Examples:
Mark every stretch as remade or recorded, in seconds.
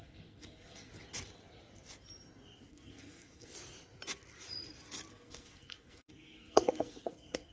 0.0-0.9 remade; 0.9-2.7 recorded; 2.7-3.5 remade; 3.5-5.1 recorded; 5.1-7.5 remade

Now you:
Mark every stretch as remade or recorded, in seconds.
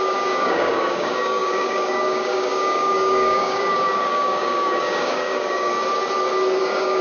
0.0-5.7 remade; 5.7-6.6 recorded; 6.6-7.0 remade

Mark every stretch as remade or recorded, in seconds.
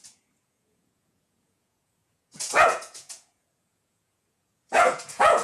0.0-5.4 remade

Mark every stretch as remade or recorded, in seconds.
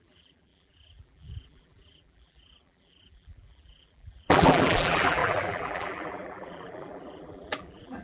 0.0-8.0 remade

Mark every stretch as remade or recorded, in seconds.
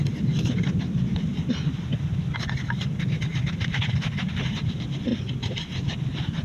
0.0-1.3 remade; 1.3-4.5 recorded; 4.5-5.1 remade; 5.1-5.7 recorded; 5.7-6.4 remade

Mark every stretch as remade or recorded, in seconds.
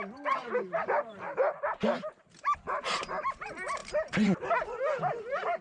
0.0-5.6 remade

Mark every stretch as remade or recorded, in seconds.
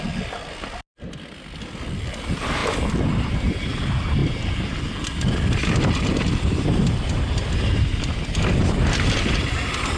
0.0-10.0 recorded